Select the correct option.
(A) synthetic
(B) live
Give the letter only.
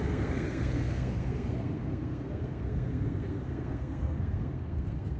A